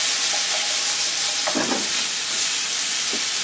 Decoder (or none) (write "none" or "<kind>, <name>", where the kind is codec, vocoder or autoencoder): none